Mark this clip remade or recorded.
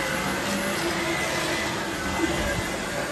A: recorded